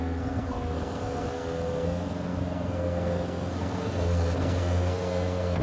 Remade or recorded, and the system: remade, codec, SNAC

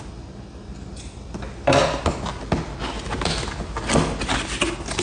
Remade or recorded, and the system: recorded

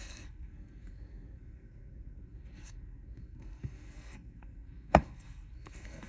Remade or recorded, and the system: remade, codec, SNAC